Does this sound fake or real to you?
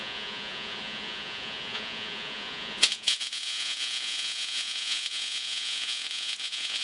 fake